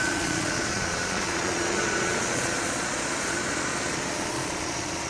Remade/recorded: remade